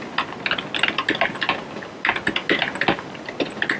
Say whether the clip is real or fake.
real